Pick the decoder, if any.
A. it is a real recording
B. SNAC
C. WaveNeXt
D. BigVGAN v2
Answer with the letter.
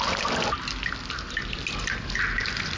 A